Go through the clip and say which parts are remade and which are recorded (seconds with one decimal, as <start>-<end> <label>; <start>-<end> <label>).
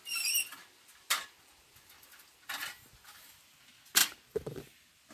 0.0-5.1 recorded